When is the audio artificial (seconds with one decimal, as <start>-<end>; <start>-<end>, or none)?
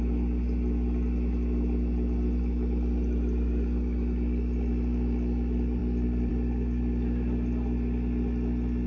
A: none